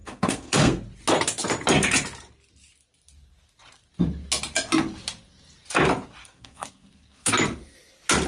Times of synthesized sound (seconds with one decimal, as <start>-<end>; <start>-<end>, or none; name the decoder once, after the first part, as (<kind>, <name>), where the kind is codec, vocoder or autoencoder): 0.0-0.8 (codec, SNAC); 6.2-7.3